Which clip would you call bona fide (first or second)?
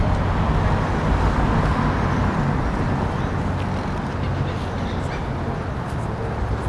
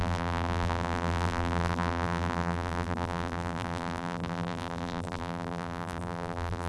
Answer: first